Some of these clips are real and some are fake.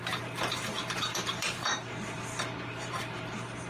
fake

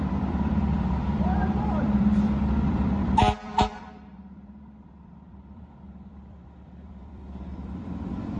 fake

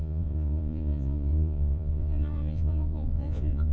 fake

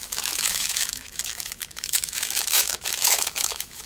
fake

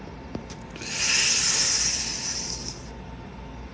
real